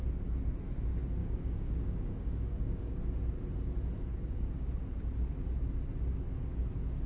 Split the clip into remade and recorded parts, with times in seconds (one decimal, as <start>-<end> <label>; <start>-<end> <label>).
0.0-1.2 recorded; 1.2-3.0 remade; 3.0-4.1 recorded; 4.1-4.7 remade; 4.7-7.1 recorded